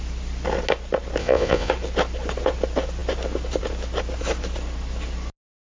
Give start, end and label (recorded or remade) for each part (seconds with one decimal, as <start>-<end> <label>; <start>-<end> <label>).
0.0-1.2 recorded; 1.2-1.7 remade; 1.7-5.6 recorded